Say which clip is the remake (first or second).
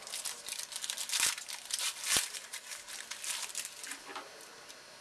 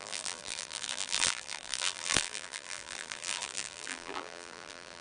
second